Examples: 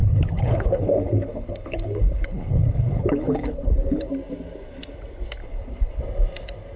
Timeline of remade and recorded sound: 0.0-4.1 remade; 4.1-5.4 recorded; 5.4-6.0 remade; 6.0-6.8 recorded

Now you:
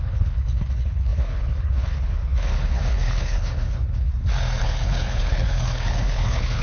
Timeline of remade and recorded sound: 0.0-4.1 remade; 4.1-4.6 recorded; 4.6-6.6 remade